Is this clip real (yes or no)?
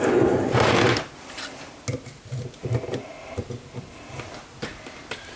yes